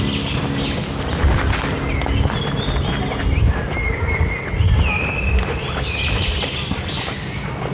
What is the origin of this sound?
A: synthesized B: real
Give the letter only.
B